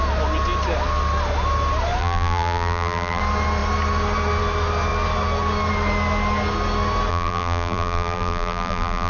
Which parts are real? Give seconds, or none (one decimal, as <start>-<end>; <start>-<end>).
0.0-2.0; 3.2-7.1